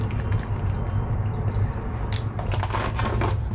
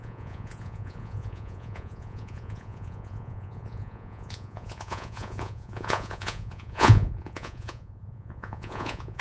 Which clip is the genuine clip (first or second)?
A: first